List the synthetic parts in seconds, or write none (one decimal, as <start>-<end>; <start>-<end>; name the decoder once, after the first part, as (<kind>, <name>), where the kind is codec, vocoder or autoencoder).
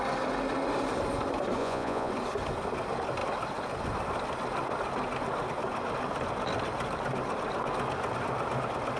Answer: 1.6-2.1 (vocoder, Vocos)